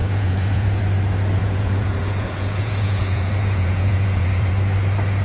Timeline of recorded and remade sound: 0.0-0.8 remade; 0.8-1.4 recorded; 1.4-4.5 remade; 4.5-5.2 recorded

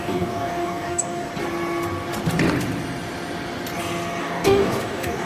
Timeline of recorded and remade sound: 0.0-1.3 remade; 1.3-4.2 recorded; 4.2-5.3 remade

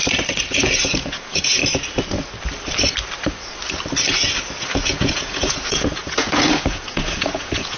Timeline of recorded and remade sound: 0.0-0.5 recorded; 0.5-1.6 remade; 1.6-4.6 recorded; 4.6-7.8 remade

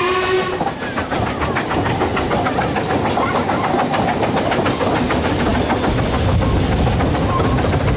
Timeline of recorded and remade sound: 0.0-2.1 remade; 2.1-4.3 recorded; 4.3-5.5 remade; 5.5-6.9 recorded; 6.9-8.0 remade

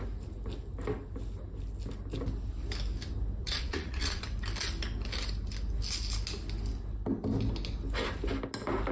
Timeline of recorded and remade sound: 0.0-3.4 recorded; 3.4-4.2 remade; 4.2-8.9 recorded

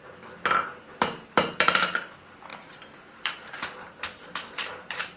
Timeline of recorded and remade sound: 0.0-0.9 recorded; 0.9-1.8 remade; 1.8-2.5 recorded; 2.5-4.3 remade; 4.3-5.2 recorded

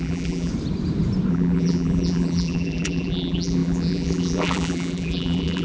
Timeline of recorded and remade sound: 0.0-0.5 remade; 0.5-1.3 recorded; 1.3-5.6 remade

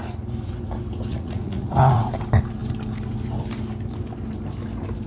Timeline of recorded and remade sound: 0.0-1.1 recorded; 1.1-1.8 remade; 1.8-5.1 recorded